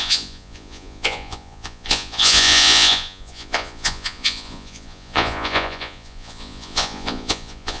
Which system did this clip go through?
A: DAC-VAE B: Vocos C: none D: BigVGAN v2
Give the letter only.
B